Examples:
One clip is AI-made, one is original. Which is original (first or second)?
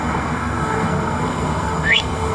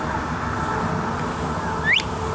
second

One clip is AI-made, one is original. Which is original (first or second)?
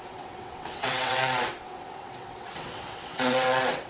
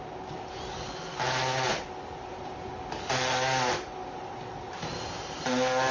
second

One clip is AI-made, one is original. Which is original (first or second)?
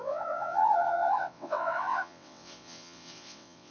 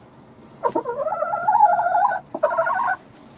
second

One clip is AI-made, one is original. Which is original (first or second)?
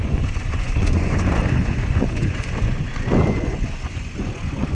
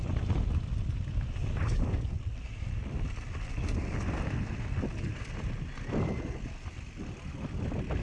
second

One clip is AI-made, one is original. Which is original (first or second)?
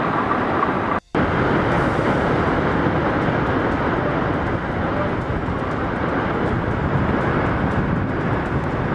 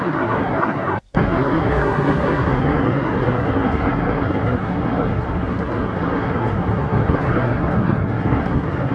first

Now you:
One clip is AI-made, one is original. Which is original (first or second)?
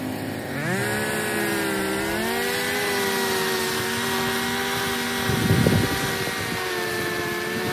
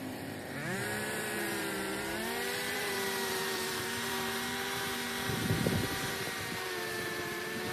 first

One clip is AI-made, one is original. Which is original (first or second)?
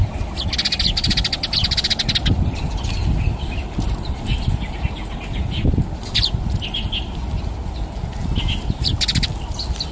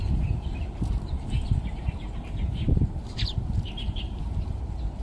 first